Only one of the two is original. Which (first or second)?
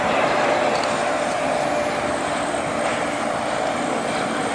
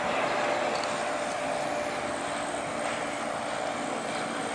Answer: second